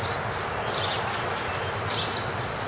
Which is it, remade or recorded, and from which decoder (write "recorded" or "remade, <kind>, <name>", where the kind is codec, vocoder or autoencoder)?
recorded